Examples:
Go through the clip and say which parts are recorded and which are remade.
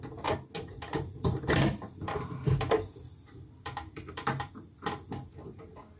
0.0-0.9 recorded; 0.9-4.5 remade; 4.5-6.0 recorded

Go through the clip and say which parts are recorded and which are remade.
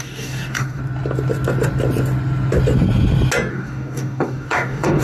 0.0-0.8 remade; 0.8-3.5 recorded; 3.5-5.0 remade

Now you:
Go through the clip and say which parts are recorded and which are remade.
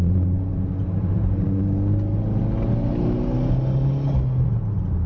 0.0-1.6 remade; 1.6-5.1 recorded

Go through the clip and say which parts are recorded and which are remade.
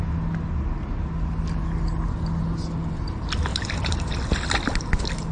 0.0-3.5 recorded; 3.5-4.1 remade; 4.1-5.3 recorded